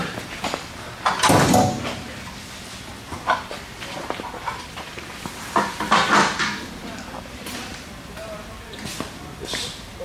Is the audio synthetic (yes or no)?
yes